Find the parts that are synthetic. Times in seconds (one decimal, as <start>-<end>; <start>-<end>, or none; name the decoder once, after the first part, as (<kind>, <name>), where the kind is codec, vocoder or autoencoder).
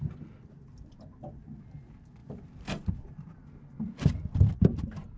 none